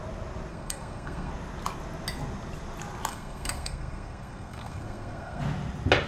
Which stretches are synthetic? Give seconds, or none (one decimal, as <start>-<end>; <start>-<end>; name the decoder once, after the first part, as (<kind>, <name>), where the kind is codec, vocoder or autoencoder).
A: 0.5-1.3 (codec, SNAC); 3.1-5.4